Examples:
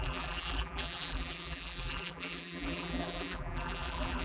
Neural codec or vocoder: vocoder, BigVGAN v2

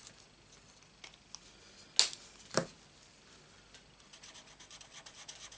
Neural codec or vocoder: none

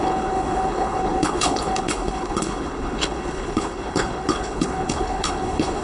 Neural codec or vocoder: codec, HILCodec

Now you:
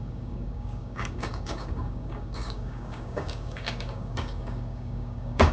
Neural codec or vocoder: codec, DAC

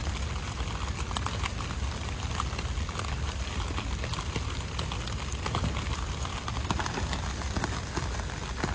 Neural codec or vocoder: none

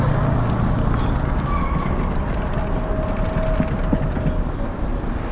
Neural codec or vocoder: none